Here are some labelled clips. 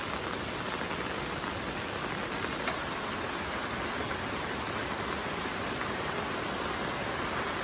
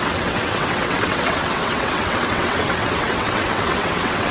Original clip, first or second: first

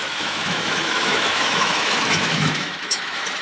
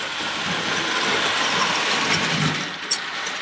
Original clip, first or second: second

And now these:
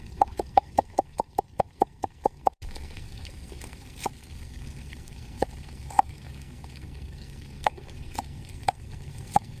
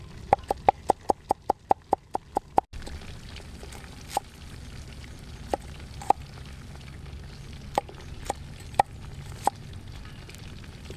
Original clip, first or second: second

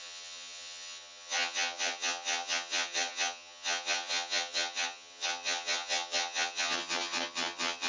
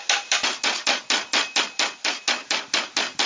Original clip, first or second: second